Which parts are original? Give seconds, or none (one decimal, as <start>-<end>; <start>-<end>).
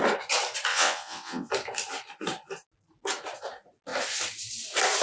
0.0-0.7; 1.5-5.0